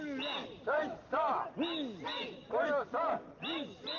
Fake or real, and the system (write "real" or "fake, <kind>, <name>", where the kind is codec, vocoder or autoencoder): real